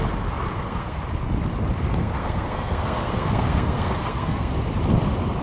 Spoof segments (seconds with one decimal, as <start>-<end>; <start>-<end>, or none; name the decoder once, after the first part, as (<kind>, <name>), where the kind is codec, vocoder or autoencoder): 0.5-1.0 (codec, SNAC); 1.9-4.5